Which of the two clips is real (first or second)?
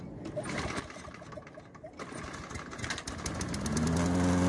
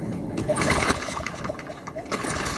first